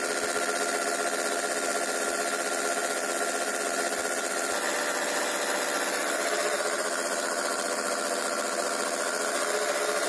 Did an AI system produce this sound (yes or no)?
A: no